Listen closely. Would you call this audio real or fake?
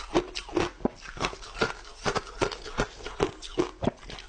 real